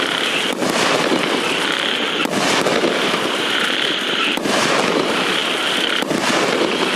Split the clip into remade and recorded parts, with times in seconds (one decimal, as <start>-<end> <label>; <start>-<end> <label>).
0.0-0.6 remade; 0.6-2.9 recorded; 2.9-7.0 remade